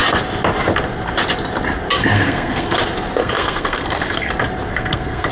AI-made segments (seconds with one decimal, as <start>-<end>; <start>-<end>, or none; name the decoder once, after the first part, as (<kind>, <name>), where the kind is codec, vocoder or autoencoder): 2.0-2.8 (codec, SNAC); 3.2-4.3; 4.7-5.3